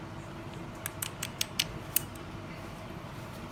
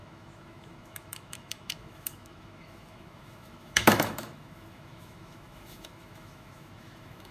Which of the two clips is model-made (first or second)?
second